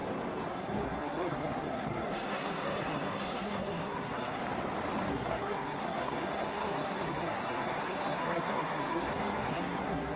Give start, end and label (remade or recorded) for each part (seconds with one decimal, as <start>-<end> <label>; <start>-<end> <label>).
0.0-0.5 recorded; 0.5-4.4 remade; 4.4-5.1 recorded; 5.1-10.2 remade